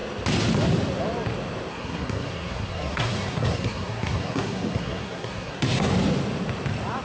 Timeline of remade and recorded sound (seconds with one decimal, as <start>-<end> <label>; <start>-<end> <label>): 0.0-1.7 recorded; 1.7-5.9 remade; 5.9-7.0 recorded